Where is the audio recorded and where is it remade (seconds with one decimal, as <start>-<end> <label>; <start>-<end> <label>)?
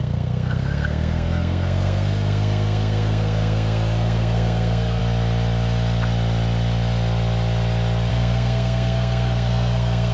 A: 0.0-5.0 remade; 5.0-8.1 recorded; 8.1-10.1 remade